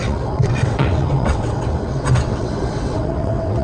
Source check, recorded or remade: remade